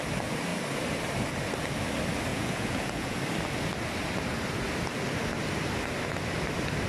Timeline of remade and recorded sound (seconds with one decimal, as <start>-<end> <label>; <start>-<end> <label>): 0.0-2.3 recorded; 2.3-3.2 remade; 3.2-6.9 recorded